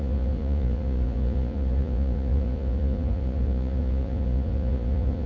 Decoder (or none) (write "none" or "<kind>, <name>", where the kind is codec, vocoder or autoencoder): vocoder, Vocos